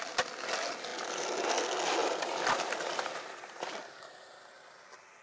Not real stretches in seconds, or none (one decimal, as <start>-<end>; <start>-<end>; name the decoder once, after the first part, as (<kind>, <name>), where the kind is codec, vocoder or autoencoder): 0.9-1.6 (vocoder, BigVGAN v2); 2.0-5.2